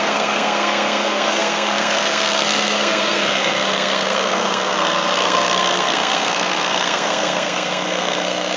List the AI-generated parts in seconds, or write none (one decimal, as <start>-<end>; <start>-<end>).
0.0-8.6